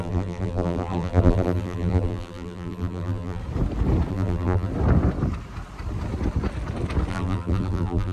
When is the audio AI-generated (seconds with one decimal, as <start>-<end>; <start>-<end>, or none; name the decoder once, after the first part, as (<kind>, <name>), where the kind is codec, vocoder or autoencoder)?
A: 0.0-3.4 (vocoder, BigVGAN v2); 4.1-4.7; 7.1-8.1